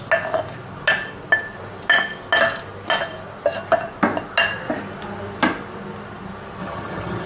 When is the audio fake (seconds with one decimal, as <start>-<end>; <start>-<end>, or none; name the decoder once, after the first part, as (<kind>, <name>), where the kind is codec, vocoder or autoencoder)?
6.6-7.3 (vocoder, HiFi-GAN)